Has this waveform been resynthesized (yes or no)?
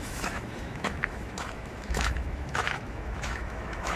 yes